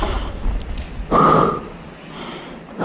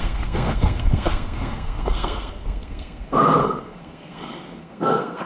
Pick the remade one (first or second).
second